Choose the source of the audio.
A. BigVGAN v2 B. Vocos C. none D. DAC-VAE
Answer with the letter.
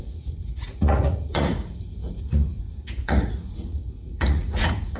B